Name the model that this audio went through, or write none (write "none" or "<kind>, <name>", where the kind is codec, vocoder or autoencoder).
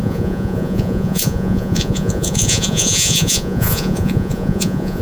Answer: vocoder, Vocos